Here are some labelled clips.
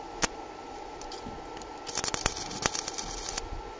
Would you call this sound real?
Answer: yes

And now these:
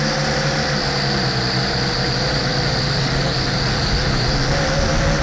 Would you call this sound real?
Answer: yes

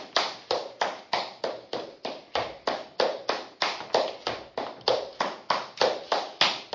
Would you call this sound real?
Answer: yes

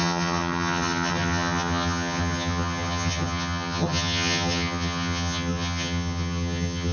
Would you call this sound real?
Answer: no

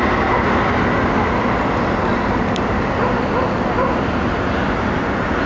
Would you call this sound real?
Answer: yes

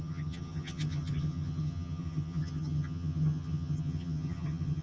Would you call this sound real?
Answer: no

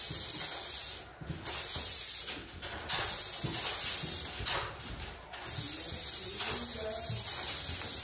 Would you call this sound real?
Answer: yes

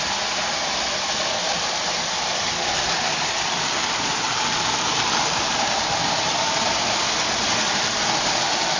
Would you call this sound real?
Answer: yes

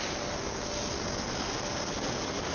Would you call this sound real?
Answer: yes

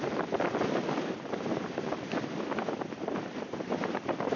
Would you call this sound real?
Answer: yes